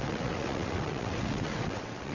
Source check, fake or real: fake